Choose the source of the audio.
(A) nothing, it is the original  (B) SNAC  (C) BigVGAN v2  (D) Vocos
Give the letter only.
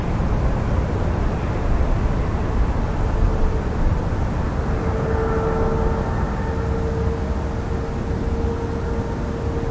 A